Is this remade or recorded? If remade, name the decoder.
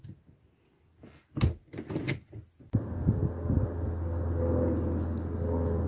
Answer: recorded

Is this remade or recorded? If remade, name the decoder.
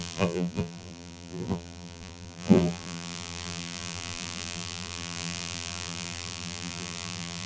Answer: remade, vocoder, BigVGAN v2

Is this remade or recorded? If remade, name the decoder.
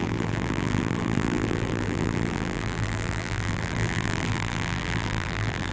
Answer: remade, vocoder, BigVGAN v2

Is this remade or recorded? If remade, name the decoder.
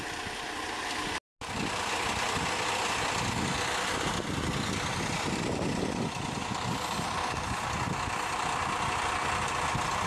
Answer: recorded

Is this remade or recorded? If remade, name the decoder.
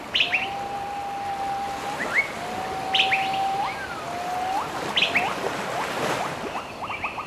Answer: recorded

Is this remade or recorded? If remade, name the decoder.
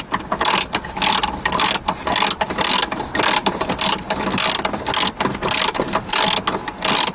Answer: recorded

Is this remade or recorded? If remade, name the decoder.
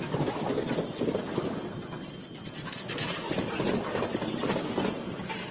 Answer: recorded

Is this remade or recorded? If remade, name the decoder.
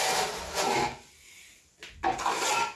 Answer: recorded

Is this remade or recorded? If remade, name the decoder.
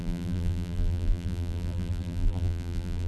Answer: remade, vocoder, BigVGAN v2